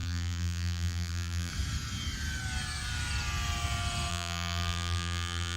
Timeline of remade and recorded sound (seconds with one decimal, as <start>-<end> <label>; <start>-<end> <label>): 0.0-1.5 remade; 1.5-4.1 recorded; 4.1-5.6 remade